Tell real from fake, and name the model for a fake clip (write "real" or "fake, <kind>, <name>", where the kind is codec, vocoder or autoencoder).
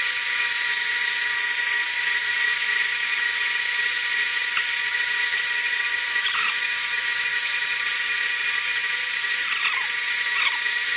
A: fake, vocoder, BigVGAN v2